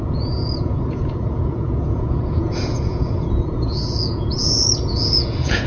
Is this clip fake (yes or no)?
yes